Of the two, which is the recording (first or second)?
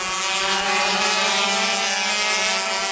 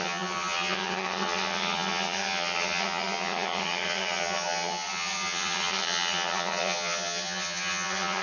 first